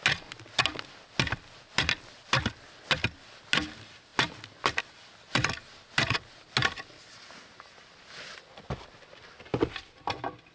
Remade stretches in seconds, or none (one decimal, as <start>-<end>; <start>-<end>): none